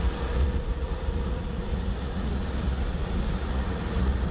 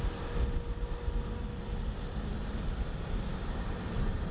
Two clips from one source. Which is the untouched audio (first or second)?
second